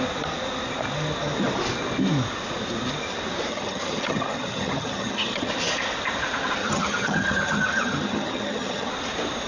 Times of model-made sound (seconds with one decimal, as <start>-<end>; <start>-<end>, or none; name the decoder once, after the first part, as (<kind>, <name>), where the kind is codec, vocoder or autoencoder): 3.5-5.5 (vocoder, HiFi-GAN); 6.6-8.9